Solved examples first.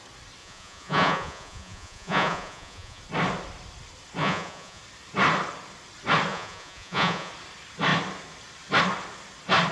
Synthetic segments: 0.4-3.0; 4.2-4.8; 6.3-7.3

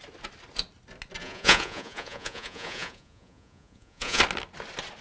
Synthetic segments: 1.2-4.2

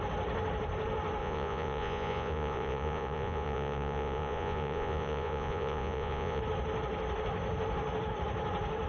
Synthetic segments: 1.2-6.4

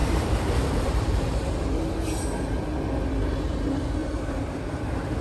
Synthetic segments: 0.0-1.5; 4.0-4.8

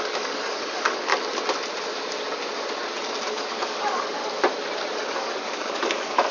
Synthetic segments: 0.0-1.1; 3.3-4.2; 4.9-6.3